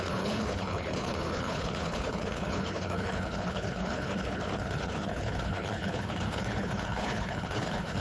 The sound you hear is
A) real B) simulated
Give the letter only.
B